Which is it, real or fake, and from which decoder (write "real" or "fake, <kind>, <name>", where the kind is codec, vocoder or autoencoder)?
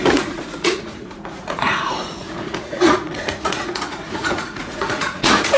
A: fake, vocoder, Vocos